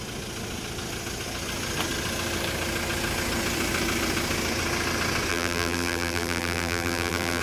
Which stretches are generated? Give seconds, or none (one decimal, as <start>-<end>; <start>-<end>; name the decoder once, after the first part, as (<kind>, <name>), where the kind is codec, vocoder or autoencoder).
5.3-7.4 (vocoder, BigVGAN v2)